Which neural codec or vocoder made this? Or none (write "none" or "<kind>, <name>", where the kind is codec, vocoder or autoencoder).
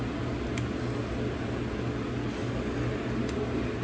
none